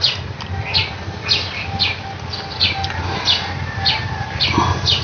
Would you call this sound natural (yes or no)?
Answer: yes